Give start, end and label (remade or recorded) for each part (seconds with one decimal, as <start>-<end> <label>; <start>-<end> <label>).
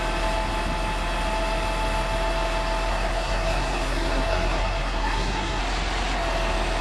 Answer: 0.0-2.9 recorded; 2.9-5.6 remade; 5.6-6.8 recorded